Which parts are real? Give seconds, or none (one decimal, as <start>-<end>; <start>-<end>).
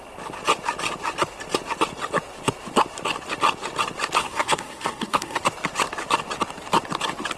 0.0-4.2; 5.4-7.4